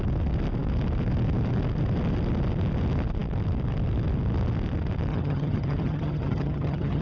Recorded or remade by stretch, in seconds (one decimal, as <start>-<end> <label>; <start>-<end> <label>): 0.0-5.1 recorded; 5.1-7.0 remade